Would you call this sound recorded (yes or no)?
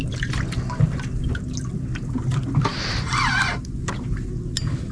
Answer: yes